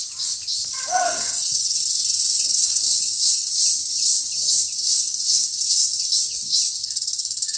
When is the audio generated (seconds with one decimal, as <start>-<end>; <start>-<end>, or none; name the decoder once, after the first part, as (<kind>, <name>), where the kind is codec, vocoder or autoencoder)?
0.9-3.5 (codec, SNAC); 4.8-6.0; 6.8-7.6